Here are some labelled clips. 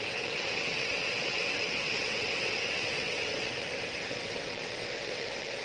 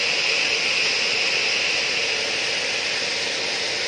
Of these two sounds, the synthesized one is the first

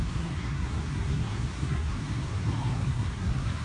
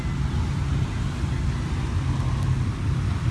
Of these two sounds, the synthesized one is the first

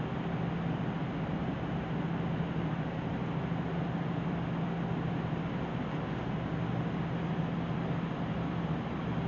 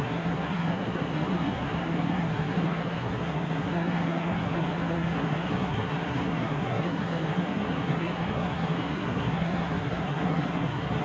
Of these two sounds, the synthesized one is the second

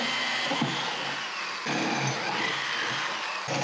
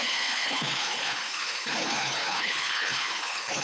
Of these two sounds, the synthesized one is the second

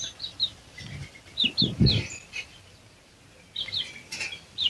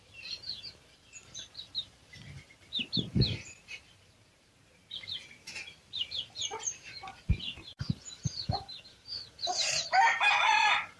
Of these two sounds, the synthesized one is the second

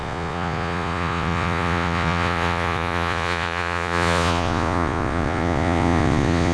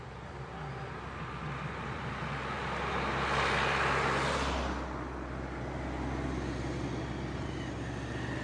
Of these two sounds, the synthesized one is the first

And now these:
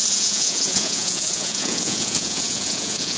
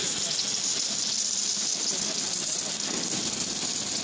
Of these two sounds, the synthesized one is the first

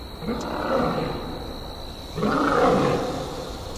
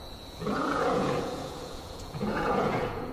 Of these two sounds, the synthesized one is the second